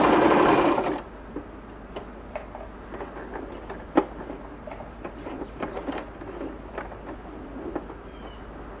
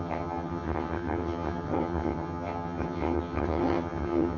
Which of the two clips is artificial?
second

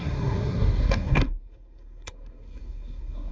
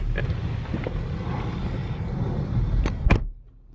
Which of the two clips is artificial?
first